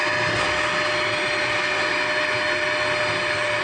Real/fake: real